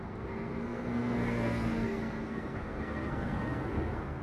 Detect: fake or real fake